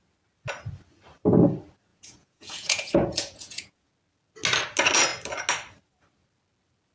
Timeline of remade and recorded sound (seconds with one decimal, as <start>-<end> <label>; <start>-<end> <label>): 0.0-1.9 recorded; 1.9-3.9 remade; 3.9-6.9 recorded

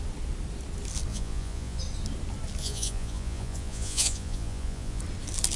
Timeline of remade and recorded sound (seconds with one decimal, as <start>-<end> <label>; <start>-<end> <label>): 0.0-1.1 recorded; 1.1-1.8 remade; 1.8-2.6 recorded; 2.6-5.0 remade; 5.0-5.6 recorded

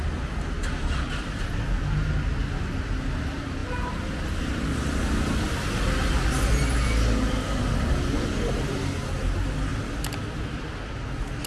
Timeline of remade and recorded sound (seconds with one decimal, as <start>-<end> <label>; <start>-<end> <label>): 0.0-11.5 recorded

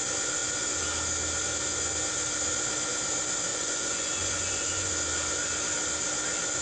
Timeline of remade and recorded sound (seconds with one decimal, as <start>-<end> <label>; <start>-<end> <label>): 0.0-3.5 recorded; 3.5-4.9 remade; 4.9-6.6 recorded

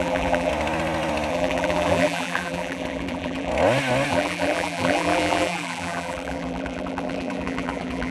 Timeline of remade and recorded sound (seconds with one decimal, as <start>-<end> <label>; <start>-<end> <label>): 0.0-0.5 remade; 0.5-1.3 recorded; 1.3-3.5 remade; 3.5-4.1 recorded; 4.1-8.1 remade

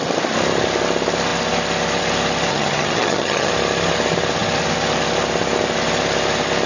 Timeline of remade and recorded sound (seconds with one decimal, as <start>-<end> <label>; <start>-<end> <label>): 0.0-2.5 recorded; 2.5-3.5 remade; 3.5-6.7 recorded

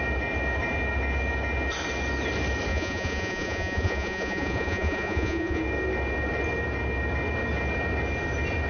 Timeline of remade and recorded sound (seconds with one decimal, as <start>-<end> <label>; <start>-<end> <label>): 0.0-2.7 recorded; 2.7-5.6 remade; 5.6-8.7 recorded